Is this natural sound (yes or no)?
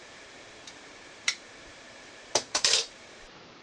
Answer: no